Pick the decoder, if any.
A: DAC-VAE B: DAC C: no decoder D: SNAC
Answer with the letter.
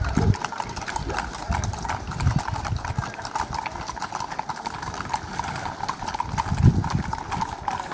C